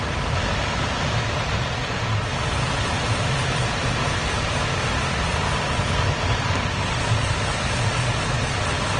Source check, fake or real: real